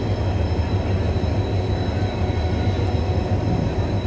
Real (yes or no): yes